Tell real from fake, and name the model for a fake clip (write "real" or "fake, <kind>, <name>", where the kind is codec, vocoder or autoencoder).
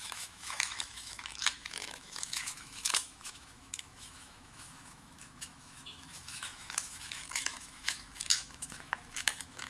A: fake, autoencoder, DAC-VAE